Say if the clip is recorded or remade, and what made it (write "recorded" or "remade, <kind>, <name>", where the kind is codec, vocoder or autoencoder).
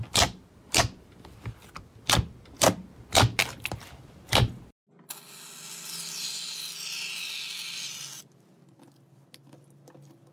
recorded